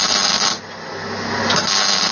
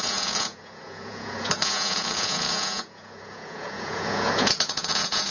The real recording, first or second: first